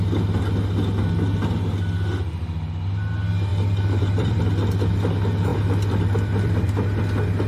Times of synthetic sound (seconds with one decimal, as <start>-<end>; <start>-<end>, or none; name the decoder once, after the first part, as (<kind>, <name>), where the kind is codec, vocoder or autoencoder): 3.5-4.4 (vocoder, BigVGAN v2); 5.5-7.0